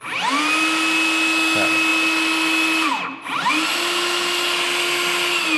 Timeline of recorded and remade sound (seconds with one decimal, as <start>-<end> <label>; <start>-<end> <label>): 0.0-5.6 recorded